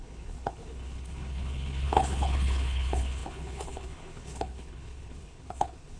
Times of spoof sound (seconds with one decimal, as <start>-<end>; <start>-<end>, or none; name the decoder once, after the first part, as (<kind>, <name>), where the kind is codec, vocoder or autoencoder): 0.0-6.0 (codec, HILCodec)